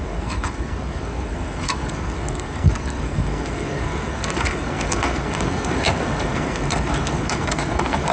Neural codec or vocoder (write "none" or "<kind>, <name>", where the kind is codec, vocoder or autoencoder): codec, SNAC